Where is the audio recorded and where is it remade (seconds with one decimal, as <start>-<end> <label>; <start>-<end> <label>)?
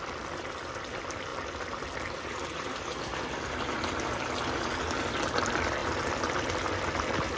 0.0-7.4 recorded